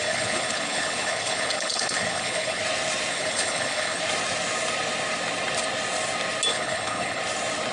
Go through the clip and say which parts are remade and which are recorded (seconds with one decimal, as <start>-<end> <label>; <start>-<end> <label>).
0.0-2.6 remade; 2.6-3.1 recorded; 3.1-4.0 remade; 4.0-6.5 recorded; 6.5-7.2 remade; 7.2-7.7 recorded